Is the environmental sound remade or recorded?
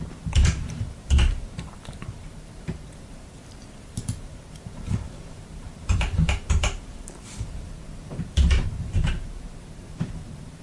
remade